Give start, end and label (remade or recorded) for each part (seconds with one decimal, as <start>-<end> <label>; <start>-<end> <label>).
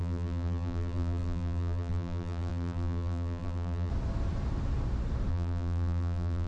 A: 0.0-3.9 remade; 3.9-5.3 recorded; 5.3-6.5 remade